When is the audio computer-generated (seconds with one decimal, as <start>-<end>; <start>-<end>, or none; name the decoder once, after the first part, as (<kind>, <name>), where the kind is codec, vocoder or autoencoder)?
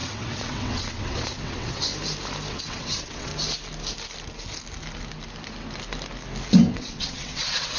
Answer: 0.0-1.9 (vocoder, WaveNeXt); 2.5-3.3; 6.7-7.8